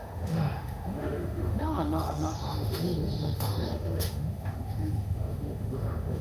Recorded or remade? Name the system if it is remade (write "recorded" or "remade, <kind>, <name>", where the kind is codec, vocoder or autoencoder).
remade, autoencoder, DAC-VAE